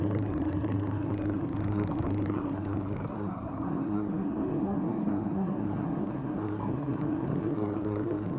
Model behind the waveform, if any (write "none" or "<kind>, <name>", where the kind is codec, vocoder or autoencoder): codec, SNAC